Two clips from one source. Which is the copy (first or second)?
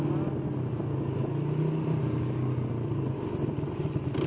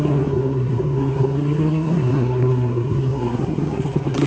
second